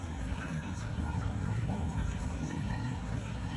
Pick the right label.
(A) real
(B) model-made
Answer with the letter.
B